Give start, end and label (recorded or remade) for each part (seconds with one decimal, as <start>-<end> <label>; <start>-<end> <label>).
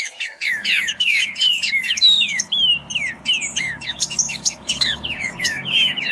0.0-2.7 remade; 2.7-3.6 recorded; 3.6-6.1 remade